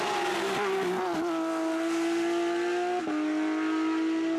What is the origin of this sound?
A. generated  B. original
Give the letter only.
B